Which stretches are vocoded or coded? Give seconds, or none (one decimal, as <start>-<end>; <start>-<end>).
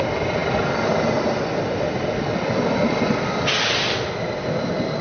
none